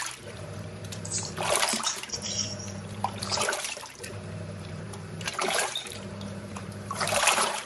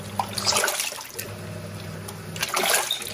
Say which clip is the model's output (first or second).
first